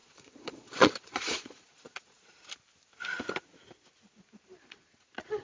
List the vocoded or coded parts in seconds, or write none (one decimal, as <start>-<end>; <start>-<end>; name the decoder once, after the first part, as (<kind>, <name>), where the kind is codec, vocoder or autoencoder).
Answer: 0.0-2.4 (vocoder, Vocos); 4.7-5.4